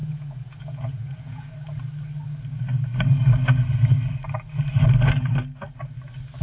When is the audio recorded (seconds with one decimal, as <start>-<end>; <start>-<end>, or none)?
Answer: 1.5-6.4